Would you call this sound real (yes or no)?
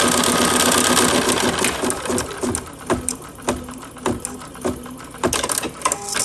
yes